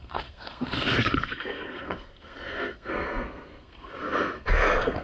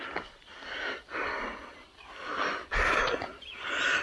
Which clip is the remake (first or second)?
first